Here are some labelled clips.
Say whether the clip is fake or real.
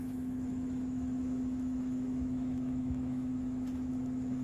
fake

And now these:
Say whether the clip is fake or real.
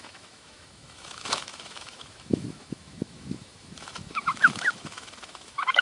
fake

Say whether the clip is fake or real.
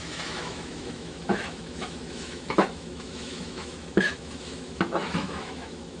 fake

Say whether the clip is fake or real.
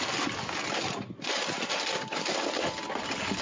real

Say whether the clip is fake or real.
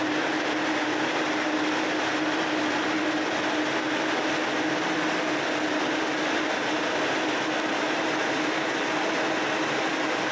real